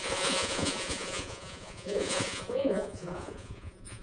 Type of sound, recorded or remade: remade